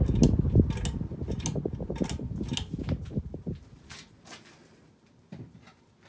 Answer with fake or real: real